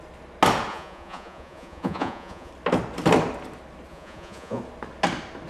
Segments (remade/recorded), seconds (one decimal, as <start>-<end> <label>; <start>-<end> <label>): 0.0-0.7 recorded; 0.7-2.5 remade; 2.5-3.9 recorded; 3.9-4.6 remade; 4.6-5.5 recorded